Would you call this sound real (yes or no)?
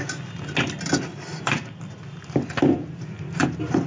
yes